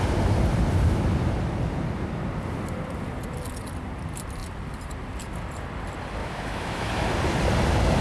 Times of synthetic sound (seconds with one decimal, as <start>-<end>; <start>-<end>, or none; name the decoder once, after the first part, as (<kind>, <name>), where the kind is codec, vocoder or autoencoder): 6.2-6.9 (autoencoder, DAC-VAE)